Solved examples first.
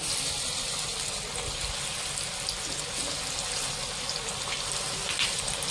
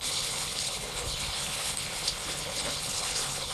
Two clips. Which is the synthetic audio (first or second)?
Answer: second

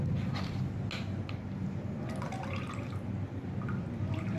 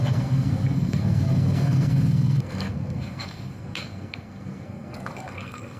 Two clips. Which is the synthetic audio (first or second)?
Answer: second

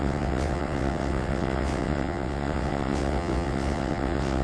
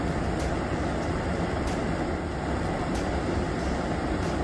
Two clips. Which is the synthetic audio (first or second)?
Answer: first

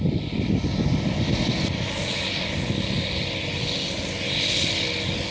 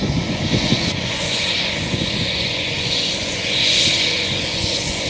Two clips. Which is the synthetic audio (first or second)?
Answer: second